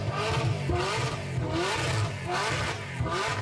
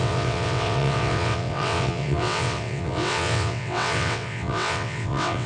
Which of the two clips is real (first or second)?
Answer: first